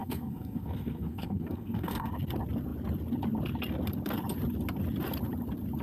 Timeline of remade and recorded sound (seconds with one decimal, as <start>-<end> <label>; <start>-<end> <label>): 0.0-2.1 remade; 2.1-5.8 recorded